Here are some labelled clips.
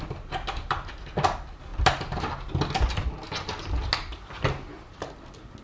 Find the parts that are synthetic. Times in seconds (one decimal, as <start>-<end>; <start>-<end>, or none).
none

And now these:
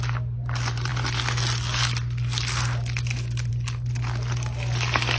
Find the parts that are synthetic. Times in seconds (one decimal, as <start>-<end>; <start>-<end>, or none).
none

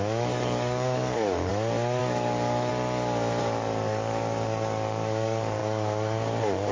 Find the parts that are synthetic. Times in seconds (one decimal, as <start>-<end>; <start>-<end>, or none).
0.0-1.5; 2.0-2.7; 3.4-6.7